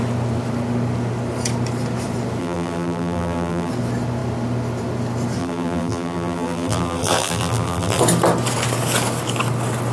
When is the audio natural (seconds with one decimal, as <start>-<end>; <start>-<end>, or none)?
0.0-2.4; 3.7-5.4; 8.0-9.9